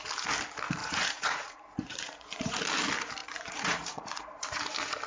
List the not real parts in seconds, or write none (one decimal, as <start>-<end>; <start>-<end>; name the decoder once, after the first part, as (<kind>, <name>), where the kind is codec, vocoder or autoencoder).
0.8-2.6 (vocoder, Vocos); 3.2-4.6